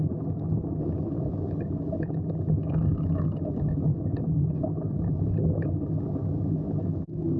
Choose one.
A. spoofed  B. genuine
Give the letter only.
A